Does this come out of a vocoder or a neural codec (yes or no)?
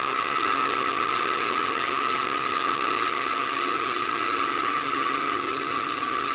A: yes